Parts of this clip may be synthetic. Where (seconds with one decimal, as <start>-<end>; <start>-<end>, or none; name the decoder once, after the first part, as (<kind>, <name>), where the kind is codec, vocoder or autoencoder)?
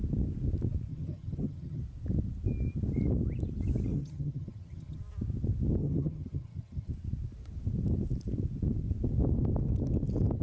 0.9-1.8 (vocoder, HiFi-GAN); 3.9-5.0; 5.8-6.9